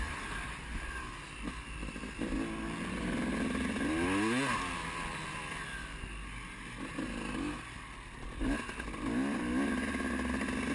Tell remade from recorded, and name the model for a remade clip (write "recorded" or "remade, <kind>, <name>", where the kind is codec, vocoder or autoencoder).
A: recorded